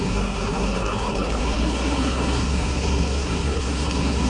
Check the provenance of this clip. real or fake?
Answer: fake